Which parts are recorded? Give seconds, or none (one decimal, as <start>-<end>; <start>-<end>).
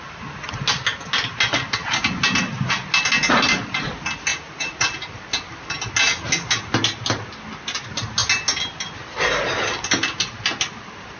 0.0-4.3; 4.9-11.2